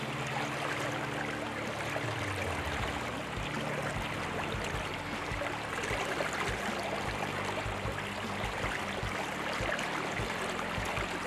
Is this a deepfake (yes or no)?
no